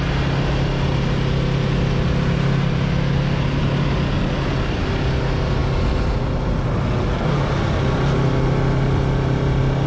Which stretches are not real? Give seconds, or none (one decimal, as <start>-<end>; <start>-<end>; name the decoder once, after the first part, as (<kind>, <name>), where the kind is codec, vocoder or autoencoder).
none